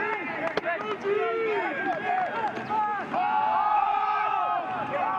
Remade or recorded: recorded